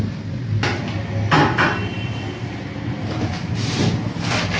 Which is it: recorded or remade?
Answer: recorded